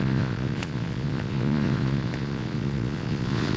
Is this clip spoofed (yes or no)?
yes